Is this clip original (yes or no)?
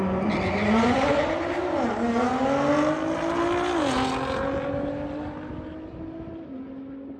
yes